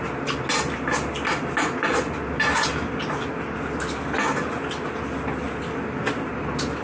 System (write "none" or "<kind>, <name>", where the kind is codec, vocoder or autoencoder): none